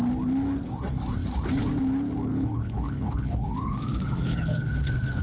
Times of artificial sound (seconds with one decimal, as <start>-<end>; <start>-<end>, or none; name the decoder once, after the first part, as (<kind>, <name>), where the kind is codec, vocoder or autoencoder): 2.3-5.2 (codec, HILCodec)

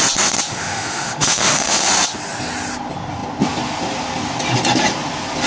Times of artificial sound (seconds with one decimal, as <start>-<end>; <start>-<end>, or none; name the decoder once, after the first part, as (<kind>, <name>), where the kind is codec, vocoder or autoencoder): 0.5-1.8 (autoencoder, DAC-VAE)

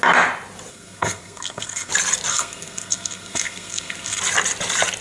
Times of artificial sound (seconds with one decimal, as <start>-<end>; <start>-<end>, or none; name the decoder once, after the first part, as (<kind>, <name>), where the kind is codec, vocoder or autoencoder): 0.7-1.9 (codec, SNAC); 2.3-4.2

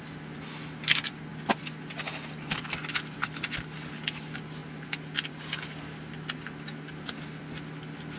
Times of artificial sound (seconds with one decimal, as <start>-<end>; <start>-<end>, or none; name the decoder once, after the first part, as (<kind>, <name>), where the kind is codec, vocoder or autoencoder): none